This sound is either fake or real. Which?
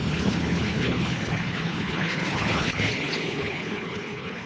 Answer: fake